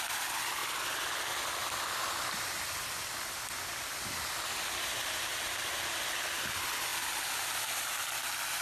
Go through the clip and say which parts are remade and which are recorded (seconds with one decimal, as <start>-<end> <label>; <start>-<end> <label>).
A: 0.0-8.6 recorded